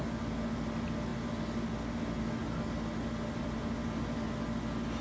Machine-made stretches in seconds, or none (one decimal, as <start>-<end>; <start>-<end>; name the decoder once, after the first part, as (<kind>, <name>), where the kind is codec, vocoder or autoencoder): none